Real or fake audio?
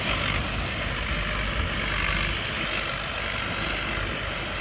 real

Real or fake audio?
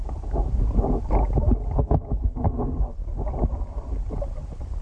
real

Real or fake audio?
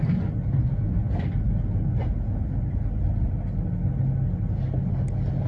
real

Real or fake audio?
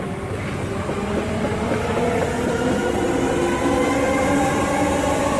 real